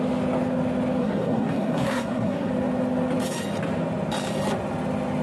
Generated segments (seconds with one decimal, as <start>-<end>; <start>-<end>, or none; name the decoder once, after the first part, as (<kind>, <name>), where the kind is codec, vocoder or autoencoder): 1.0-2.5 (codec, SNAC)